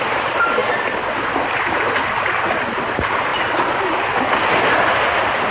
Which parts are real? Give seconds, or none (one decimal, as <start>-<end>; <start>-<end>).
0.0-5.5